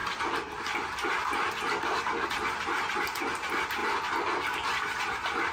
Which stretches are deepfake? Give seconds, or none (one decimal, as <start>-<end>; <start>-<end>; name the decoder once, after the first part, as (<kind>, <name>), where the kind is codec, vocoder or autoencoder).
none